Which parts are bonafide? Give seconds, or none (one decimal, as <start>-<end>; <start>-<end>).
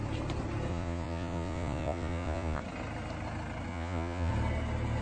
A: 0.0-0.7; 2.6-3.7; 4.3-5.0